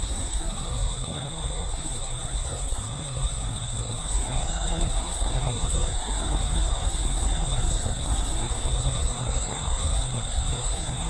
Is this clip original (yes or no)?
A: no